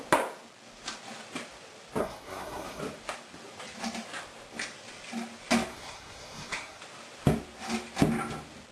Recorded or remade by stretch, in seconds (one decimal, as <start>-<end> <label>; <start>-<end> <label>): 0.0-2.0 recorded; 2.0-2.8 remade; 2.8-5.7 recorded; 5.7-6.8 remade; 6.8-8.7 recorded